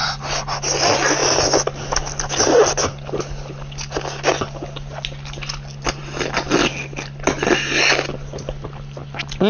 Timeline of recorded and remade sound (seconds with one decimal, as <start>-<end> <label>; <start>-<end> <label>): 0.0-9.5 recorded